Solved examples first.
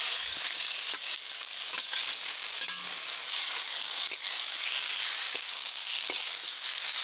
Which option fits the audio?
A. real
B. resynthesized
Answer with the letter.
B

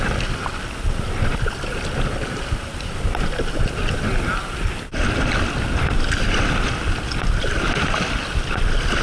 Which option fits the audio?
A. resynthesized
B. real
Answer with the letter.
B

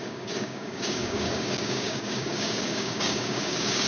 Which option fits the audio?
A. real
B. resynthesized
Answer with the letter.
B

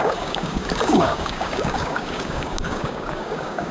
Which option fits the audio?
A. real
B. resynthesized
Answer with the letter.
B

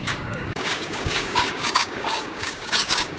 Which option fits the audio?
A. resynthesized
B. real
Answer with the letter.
A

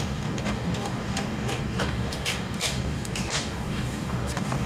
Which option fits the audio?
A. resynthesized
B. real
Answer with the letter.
A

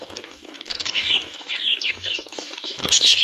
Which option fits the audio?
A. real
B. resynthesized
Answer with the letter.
B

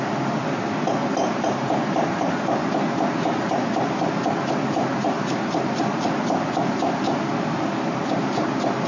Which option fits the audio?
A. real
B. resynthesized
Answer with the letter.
A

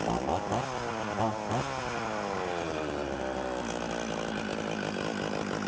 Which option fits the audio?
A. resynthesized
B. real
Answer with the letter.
B